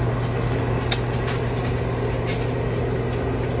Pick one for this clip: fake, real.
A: real